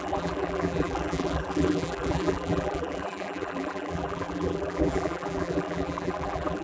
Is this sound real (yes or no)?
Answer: no